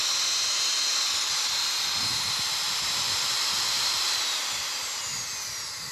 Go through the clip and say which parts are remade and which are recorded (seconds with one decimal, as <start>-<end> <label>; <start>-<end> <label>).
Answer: 0.0-0.9 recorded; 0.9-1.6 remade; 1.6-2.1 recorded; 2.1-4.8 remade; 4.8-5.9 recorded